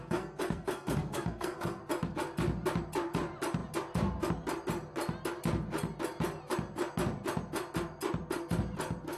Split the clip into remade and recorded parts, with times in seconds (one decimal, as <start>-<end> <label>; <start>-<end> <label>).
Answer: 0.0-1.8 remade; 1.8-9.2 recorded

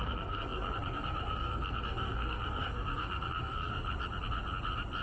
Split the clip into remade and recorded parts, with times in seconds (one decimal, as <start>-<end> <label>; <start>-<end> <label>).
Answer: 0.0-3.7 remade; 3.7-5.0 recorded

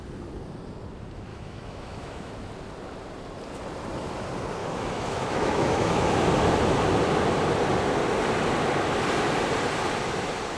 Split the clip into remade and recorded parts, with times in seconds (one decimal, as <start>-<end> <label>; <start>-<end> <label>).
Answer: 0.0-1.3 recorded; 1.3-2.3 remade; 2.3-4.6 recorded; 4.6-6.2 remade; 6.2-10.6 recorded

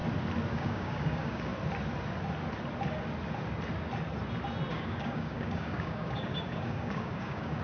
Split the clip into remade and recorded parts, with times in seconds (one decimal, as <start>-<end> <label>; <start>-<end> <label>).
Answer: 0.0-0.5 recorded; 0.5-1.5 remade; 1.5-4.7 recorded; 4.7-7.6 remade